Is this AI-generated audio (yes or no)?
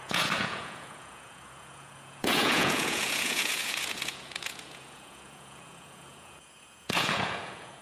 yes